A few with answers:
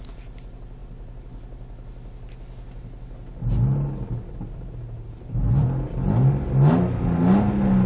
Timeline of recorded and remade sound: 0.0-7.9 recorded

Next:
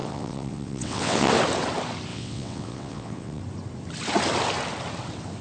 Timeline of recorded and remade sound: 0.0-1.3 remade; 1.3-2.1 recorded; 2.1-3.4 remade; 3.4-5.4 recorded